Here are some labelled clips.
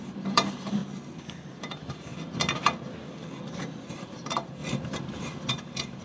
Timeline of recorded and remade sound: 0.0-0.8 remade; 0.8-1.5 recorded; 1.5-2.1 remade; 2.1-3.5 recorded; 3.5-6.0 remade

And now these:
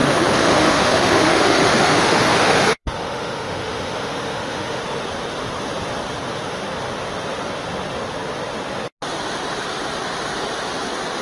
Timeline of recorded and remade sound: 0.0-4.8 remade; 4.8-11.2 recorded

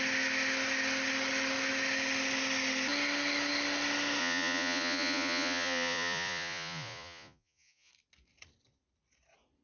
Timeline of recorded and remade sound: 0.0-4.2 recorded; 4.2-7.9 remade; 7.9-9.6 recorded

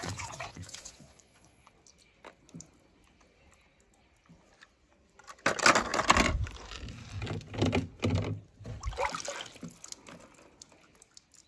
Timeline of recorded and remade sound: 0.0-1.7 remade; 1.7-11.5 recorded

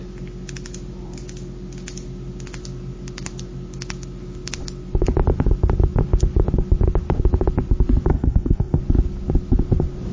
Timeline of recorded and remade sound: 0.0-8.1 recorded; 8.1-8.8 remade; 8.8-10.1 recorded

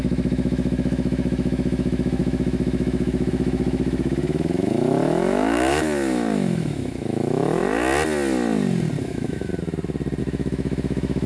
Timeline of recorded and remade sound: 0.0-7.6 remade; 7.6-9.0 recorded; 9.0-9.5 remade; 9.5-10.2 recorded; 10.2-11.3 remade